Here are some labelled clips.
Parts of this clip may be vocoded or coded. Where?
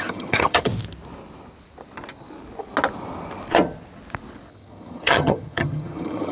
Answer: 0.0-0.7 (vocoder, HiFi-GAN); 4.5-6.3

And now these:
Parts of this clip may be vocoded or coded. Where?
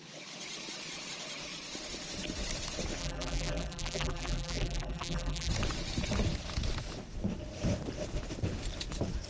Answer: 3.0-5.5 (vocoder, BigVGAN v2)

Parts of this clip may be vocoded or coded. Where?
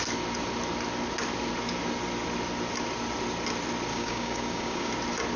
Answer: 3.9-4.9 (codec, DAC)